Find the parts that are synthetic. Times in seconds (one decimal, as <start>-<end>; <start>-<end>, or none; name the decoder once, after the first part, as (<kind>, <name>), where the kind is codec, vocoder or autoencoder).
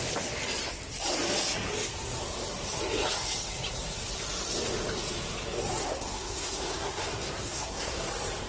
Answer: 5.8-8.1 (codec, SNAC)